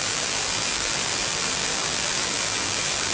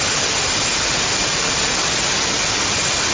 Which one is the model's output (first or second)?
first